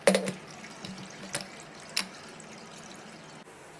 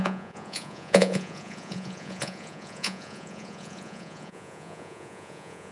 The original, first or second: first